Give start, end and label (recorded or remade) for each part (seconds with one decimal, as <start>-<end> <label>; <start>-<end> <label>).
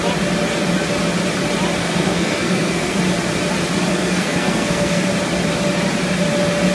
0.0-1.8 recorded; 1.8-3.0 remade; 3.0-3.9 recorded; 3.9-5.0 remade; 5.0-6.7 recorded